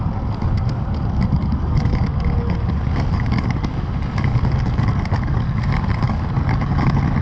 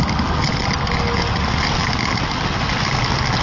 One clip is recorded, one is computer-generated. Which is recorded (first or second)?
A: second